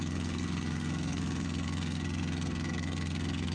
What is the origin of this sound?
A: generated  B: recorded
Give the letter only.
A